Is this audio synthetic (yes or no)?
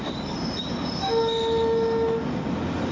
no